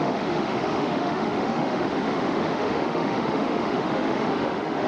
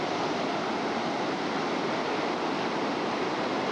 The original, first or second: second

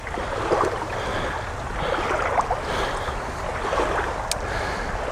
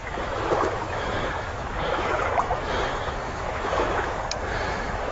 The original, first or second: first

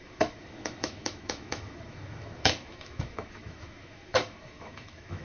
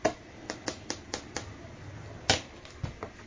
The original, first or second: second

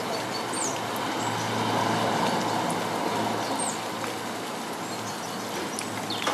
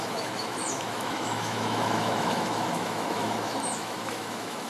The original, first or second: first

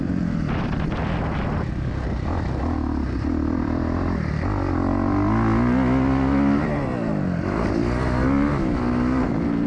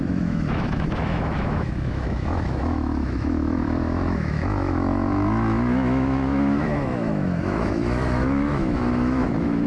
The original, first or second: first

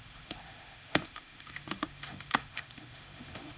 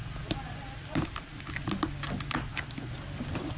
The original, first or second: second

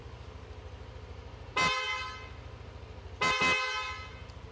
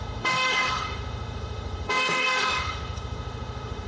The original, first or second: first